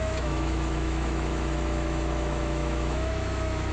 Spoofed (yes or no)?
yes